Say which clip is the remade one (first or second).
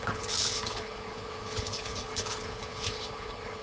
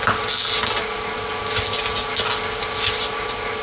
first